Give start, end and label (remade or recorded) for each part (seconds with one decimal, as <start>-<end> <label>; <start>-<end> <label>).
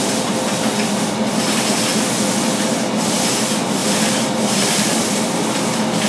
0.0-3.8 recorded; 3.8-6.1 remade